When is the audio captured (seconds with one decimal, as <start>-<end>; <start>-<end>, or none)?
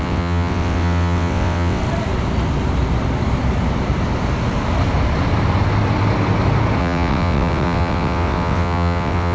1.8-6.8